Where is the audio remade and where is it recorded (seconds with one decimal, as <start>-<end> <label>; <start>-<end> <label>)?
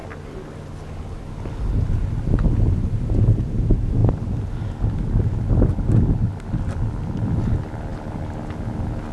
0.0-9.1 recorded